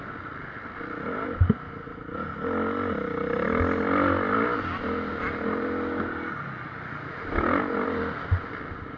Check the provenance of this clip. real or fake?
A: real